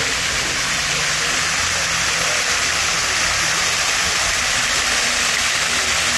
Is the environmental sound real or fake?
real